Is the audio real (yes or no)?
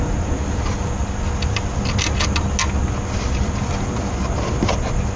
yes